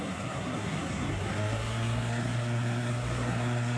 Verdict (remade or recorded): remade